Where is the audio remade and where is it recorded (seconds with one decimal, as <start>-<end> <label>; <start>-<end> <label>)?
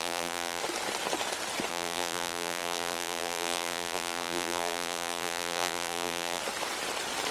0.0-0.6 remade; 0.6-1.7 recorded; 1.7-6.4 remade; 6.4-7.3 recorded